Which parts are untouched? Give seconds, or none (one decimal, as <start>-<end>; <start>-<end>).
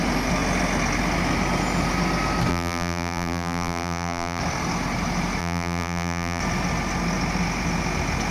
0.0-2.5; 4.4-5.4; 6.4-8.3